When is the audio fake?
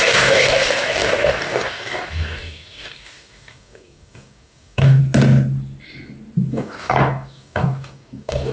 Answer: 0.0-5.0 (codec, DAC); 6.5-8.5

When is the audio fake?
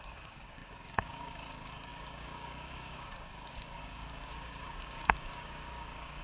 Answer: 0.0-6.2 (codec, DAC)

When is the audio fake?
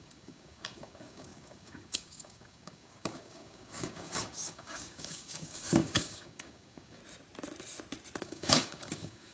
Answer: 0.0-7.0 (codec, DAC); 8.2-9.3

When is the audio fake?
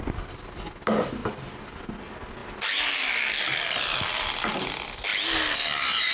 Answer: none